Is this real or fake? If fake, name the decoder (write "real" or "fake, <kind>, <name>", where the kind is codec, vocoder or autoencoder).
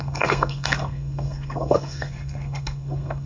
fake, codec, SNAC